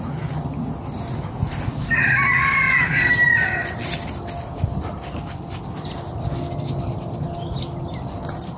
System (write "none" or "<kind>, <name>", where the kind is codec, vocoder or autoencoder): none